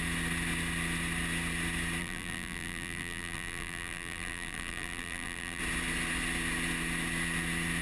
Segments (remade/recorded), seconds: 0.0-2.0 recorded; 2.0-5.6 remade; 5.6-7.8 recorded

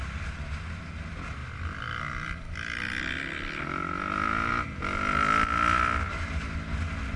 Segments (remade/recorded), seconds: 0.0-7.2 recorded

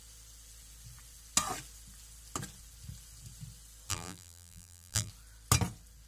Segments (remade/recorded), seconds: 0.0-3.9 recorded; 3.9-5.1 remade; 5.1-6.1 recorded

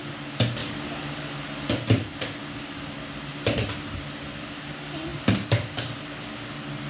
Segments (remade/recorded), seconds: 0.0-6.9 recorded

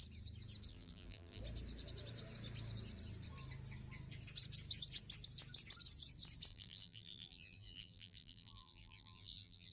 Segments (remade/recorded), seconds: 0.0-0.7 recorded; 0.7-1.4 remade; 1.4-6.5 recorded; 6.5-9.7 remade

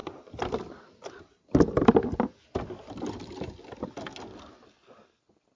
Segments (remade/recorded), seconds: 0.0-1.2 remade; 1.2-5.6 recorded

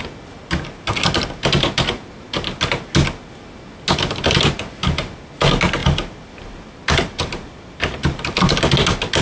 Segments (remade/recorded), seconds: 0.0-5.8 recorded; 5.8-8.6 remade; 8.6-9.2 recorded

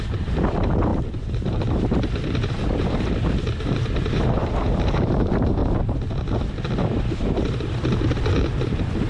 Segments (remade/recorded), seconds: 0.0-5.6 remade; 5.6-6.8 recorded; 6.8-9.1 remade